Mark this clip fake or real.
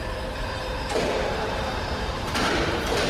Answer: fake